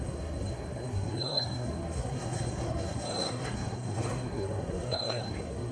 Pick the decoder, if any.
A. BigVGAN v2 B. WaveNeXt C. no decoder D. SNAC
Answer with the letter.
D